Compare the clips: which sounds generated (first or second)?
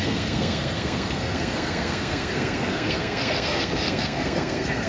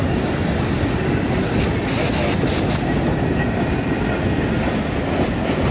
first